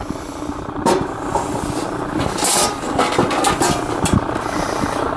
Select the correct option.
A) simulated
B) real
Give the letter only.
A